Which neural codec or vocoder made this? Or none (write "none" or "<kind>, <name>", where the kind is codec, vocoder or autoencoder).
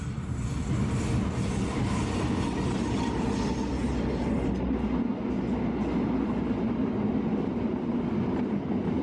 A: none